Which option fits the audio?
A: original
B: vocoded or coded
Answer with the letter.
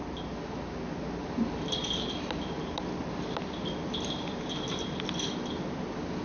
A